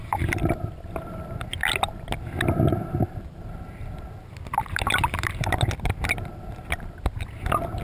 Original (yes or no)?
no